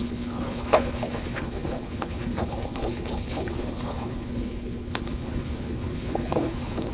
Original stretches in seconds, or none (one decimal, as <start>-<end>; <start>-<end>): none

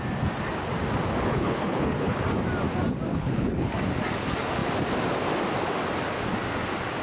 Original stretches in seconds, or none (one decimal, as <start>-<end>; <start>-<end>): 0.0-1.3; 2.2-3.1; 3.7-7.0

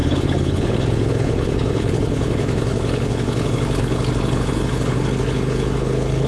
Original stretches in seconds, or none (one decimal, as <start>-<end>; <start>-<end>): none

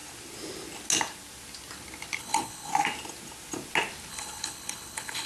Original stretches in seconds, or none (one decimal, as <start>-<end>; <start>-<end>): 0.0-2.2; 2.7-4.1

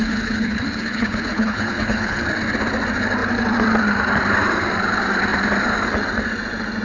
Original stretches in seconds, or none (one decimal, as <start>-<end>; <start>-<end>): 2.2-6.8

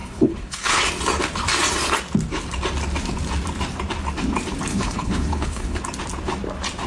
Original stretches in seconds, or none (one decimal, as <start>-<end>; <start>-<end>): 0.8-4.7; 5.8-6.9